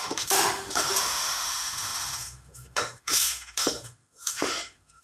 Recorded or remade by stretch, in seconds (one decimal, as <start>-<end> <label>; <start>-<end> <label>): 0.0-5.0 remade